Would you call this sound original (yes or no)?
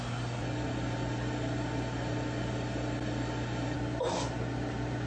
yes